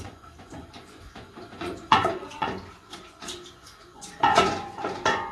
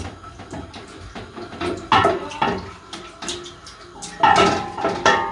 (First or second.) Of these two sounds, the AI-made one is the first